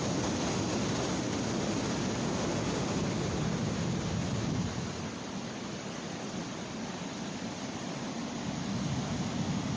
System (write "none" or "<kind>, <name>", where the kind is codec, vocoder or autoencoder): none